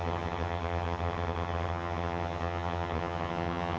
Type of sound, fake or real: fake